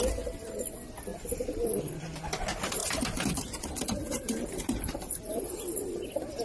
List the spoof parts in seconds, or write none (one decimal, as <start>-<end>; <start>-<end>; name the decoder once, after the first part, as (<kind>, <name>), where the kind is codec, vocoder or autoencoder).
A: 2.8-5.3 (vocoder, BigVGAN v2)